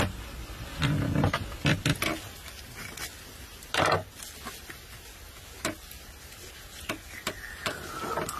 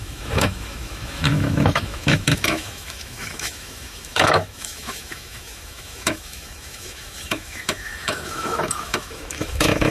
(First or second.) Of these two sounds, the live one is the first